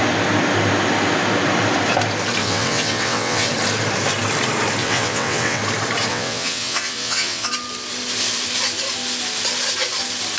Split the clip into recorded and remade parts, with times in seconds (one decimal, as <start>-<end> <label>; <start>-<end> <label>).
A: 0.0-2.4 recorded; 2.4-3.5 remade; 3.5-4.8 recorded; 4.8-5.6 remade; 5.6-6.1 recorded; 6.1-7.5 remade; 7.5-10.4 recorded